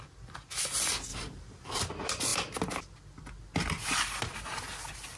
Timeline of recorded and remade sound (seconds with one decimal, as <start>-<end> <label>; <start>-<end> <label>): 0.0-1.1 recorded; 1.1-1.8 remade; 1.8-5.2 recorded